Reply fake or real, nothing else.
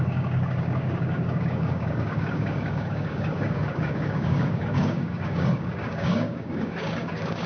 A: fake